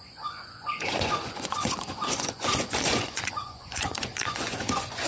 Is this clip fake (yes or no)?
yes